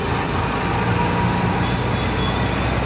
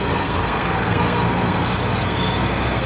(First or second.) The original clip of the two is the first